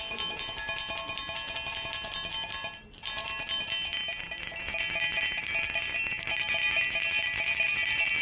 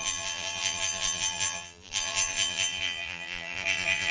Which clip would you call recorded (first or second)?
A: first